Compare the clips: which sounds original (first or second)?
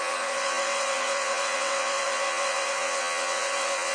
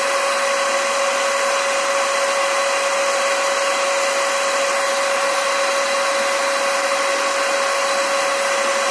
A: second